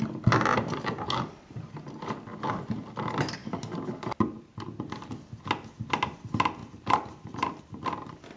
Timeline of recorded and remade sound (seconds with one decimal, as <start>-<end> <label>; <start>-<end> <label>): 0.0-6.6 recorded; 6.6-7.6 remade; 7.6-8.4 recorded